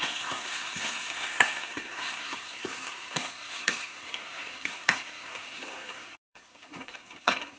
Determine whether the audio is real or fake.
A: fake